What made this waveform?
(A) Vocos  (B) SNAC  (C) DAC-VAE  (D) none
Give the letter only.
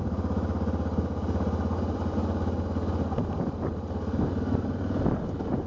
D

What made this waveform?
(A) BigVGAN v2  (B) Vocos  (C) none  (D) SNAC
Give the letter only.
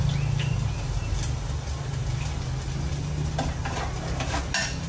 C